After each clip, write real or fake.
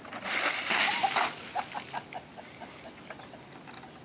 real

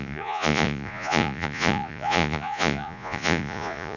fake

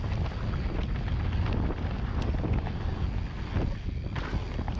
real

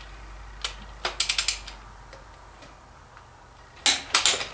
real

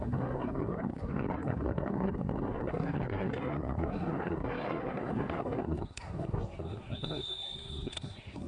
fake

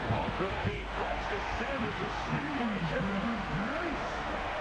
fake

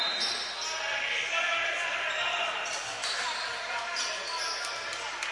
real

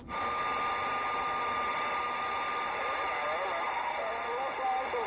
real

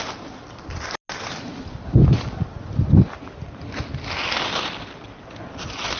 real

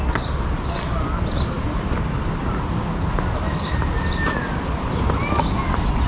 real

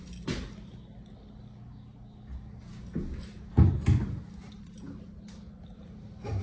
real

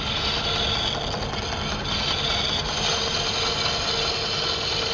real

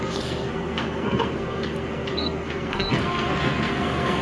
fake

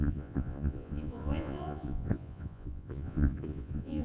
fake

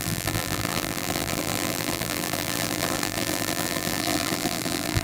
fake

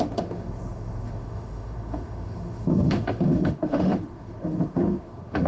fake